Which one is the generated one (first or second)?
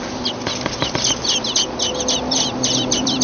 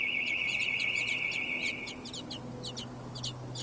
first